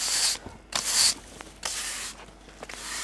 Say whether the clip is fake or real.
real